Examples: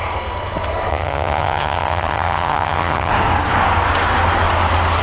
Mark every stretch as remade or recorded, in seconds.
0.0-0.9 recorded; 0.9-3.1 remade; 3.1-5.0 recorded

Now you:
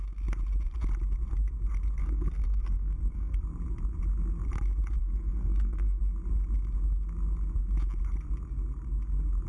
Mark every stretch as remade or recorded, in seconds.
0.0-2.0 recorded; 2.0-3.4 remade; 3.4-5.0 recorded; 5.0-6.0 remade; 6.0-9.5 recorded

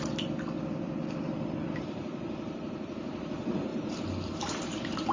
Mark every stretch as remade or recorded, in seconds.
0.0-3.7 remade; 3.7-4.3 recorded; 4.3-5.1 remade

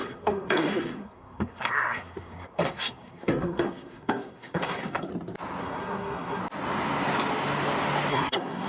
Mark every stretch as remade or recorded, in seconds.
0.0-5.1 remade; 5.1-5.6 recorded; 5.6-6.4 remade; 6.4-8.1 recorded; 8.1-8.7 remade

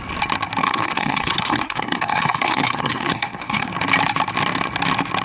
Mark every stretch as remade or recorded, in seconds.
0.0-0.6 recorded; 0.6-3.7 remade; 3.7-5.2 recorded

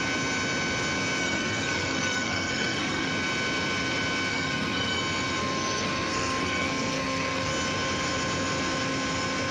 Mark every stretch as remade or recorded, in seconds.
0.0-1.2 recorded; 1.2-3.1 remade; 3.1-4.3 recorded; 4.3-5.0 remade; 5.0-5.4 recorded; 5.4-7.5 remade; 7.5-9.5 recorded

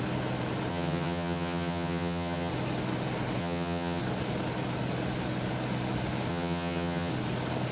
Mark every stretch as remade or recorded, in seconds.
0.0-0.7 recorded; 0.7-2.5 remade; 2.5-3.4 recorded; 3.4-4.0 remade; 4.0-6.3 recorded; 6.3-7.1 remade; 7.1-7.7 recorded